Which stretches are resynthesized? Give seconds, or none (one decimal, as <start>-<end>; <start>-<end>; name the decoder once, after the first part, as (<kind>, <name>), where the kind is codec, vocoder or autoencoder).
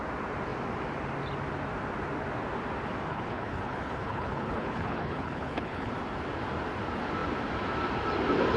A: 3.1-5.9 (codec, HILCodec)